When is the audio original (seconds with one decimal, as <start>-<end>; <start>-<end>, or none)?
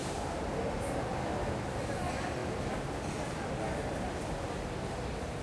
0.0-5.4